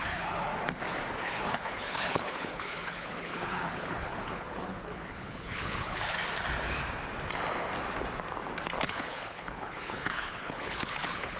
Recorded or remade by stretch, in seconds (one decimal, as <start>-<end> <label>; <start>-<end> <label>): 0.0-0.5 remade; 0.5-1.2 recorded; 1.2-6.2 remade; 6.2-8.8 recorded; 8.8-11.4 remade